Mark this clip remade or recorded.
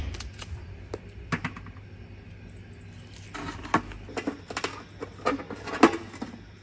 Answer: recorded